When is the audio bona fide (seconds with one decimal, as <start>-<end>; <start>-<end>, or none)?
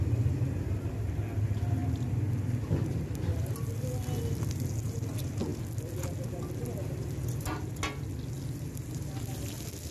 0.0-9.9